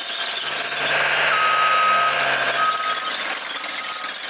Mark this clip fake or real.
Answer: real